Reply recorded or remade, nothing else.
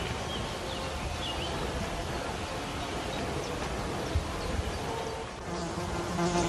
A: recorded